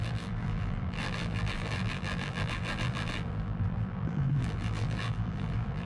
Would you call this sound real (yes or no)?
no